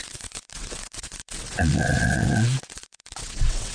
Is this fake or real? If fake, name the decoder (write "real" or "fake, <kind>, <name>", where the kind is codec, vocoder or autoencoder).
fake, vocoder, WaveNeXt